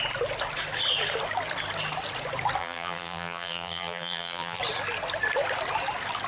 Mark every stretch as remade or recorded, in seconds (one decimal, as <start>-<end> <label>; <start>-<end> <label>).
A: 0.0-2.6 recorded; 2.6-4.6 remade; 4.6-6.3 recorded